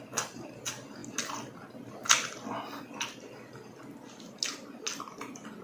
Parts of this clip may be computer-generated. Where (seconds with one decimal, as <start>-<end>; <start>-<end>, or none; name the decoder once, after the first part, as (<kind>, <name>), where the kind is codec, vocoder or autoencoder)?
none